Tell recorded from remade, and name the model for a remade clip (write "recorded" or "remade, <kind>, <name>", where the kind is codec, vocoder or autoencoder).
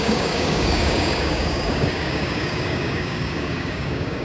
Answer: remade, codec, DAC